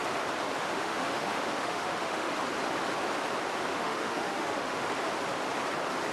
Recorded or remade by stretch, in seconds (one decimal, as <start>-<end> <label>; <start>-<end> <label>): 0.0-0.6 recorded; 0.6-2.3 remade; 2.3-3.7 recorded; 3.7-4.9 remade; 4.9-6.1 recorded